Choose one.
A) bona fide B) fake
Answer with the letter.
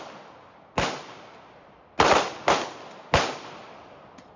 A